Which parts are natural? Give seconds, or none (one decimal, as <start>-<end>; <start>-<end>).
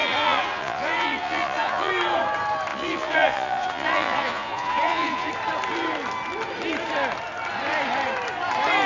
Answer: 1.9-2.7; 5.3-8.9